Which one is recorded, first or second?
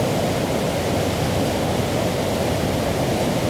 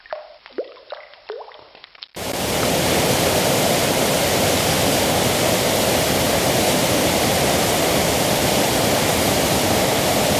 first